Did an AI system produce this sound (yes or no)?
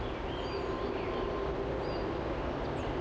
no